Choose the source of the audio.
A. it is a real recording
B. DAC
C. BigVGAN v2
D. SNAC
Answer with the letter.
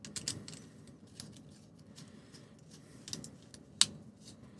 A